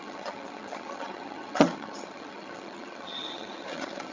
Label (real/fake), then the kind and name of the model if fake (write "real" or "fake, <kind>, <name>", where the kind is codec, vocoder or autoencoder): fake, vocoder, HiFi-GAN